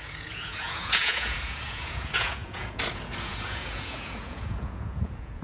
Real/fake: fake